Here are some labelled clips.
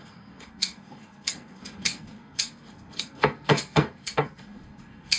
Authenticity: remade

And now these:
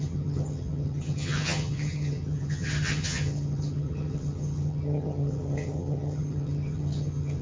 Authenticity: remade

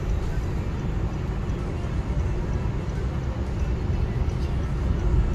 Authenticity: recorded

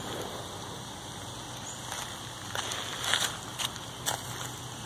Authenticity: recorded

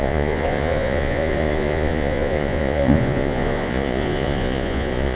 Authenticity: remade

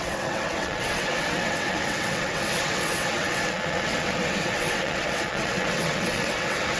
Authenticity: remade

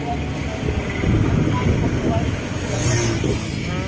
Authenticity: recorded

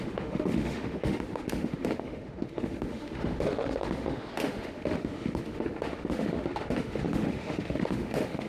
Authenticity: remade